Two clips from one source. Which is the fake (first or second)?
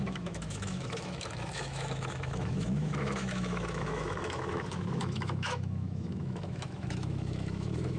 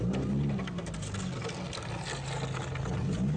first